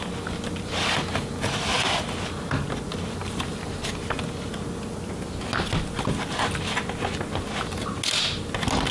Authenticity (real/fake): real